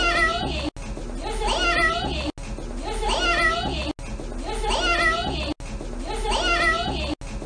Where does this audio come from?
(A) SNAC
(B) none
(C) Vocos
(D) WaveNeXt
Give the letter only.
B